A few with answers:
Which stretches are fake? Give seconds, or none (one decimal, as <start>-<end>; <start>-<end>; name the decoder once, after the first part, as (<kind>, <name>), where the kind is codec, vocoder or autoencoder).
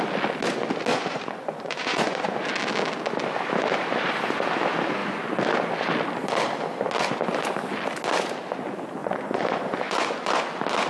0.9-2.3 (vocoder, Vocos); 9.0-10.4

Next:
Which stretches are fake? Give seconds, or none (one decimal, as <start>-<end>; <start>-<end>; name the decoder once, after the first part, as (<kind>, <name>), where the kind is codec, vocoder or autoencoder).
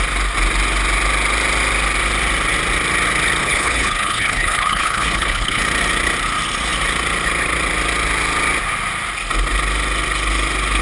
3.4-5.6 (codec, HILCodec)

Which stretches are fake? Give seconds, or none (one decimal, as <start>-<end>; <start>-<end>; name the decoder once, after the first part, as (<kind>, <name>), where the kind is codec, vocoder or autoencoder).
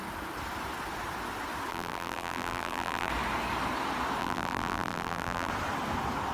1.7-3.1 (vocoder, BigVGAN v2); 4.2-5.5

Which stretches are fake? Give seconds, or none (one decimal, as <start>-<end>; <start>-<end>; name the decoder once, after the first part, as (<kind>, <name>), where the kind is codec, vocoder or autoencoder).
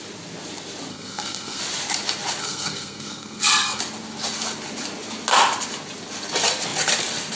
0.9-1.6 (codec, SNAC); 2.4-3.8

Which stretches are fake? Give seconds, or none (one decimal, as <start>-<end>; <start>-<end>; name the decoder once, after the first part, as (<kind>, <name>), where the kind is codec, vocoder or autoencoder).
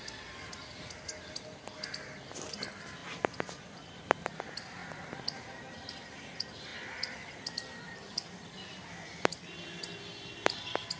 3.0-4.0 (vocoder, BigVGAN v2); 4.8-5.9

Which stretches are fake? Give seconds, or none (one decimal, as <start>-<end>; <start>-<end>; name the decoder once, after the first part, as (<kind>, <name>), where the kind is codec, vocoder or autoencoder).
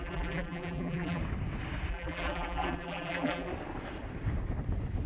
0.0-1.2 (vocoder, BigVGAN v2); 1.9-3.5